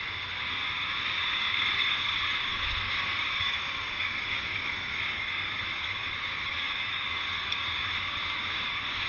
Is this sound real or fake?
fake